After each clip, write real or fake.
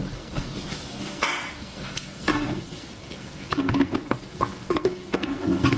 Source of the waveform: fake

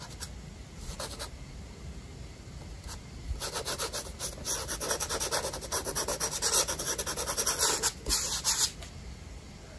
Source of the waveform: real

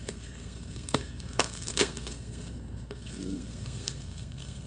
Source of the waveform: fake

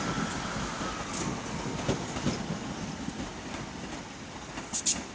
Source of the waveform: real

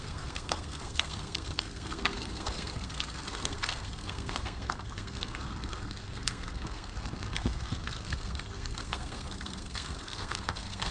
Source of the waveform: fake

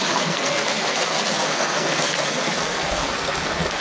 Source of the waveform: fake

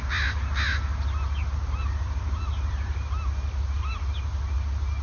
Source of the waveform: real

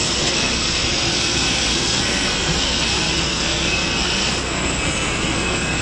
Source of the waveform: fake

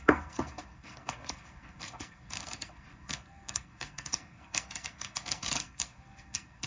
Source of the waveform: fake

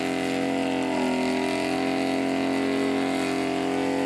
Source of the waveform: real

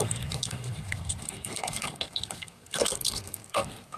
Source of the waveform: fake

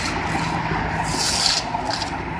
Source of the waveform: real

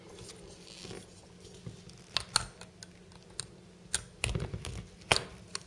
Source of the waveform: real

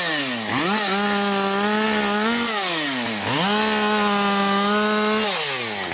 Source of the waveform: real